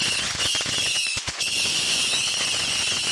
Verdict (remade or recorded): remade